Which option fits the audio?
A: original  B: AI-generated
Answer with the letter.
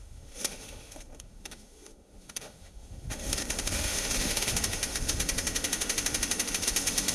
B